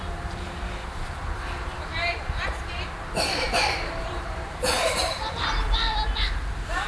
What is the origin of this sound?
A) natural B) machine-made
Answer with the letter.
B